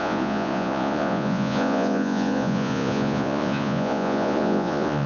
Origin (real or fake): fake